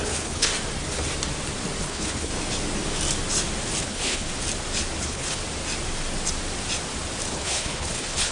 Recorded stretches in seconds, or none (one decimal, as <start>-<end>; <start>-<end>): 0.5-1.8; 2.3-3.8; 4.3-5.0; 5.4-7.3